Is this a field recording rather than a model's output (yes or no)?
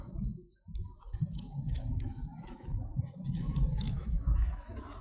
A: no